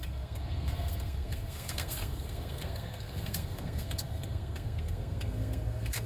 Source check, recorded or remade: remade